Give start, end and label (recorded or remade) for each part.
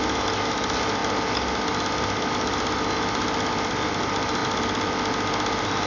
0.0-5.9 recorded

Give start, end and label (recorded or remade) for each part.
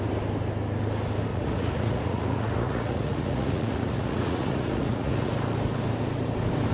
0.0-1.3 recorded; 1.3-5.3 remade; 5.3-6.7 recorded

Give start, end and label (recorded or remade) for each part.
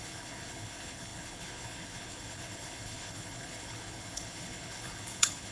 0.0-5.5 remade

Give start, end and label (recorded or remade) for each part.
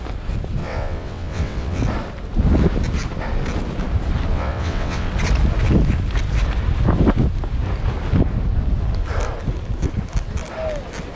0.0-0.6 recorded; 0.6-1.8 remade; 1.8-4.3 recorded; 4.3-5.1 remade; 5.1-11.2 recorded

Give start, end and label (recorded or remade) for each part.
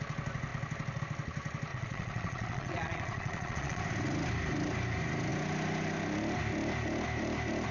0.0-1.7 recorded; 1.7-3.8 remade; 3.8-7.7 recorded